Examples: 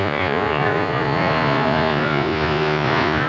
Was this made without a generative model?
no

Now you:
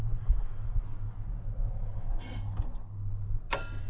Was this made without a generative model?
yes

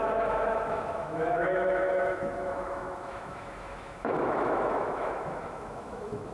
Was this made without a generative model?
no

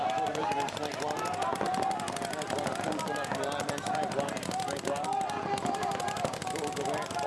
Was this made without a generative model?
yes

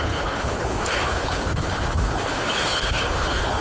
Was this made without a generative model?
no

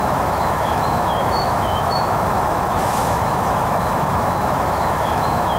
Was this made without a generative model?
no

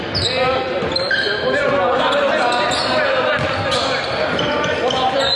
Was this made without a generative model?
yes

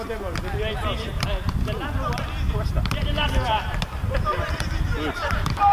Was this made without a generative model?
yes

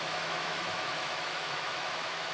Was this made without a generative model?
no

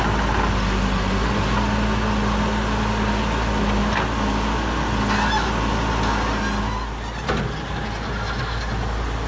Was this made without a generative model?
yes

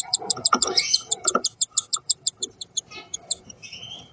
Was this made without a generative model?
no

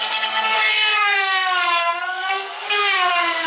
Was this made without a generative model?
no